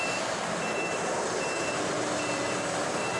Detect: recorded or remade remade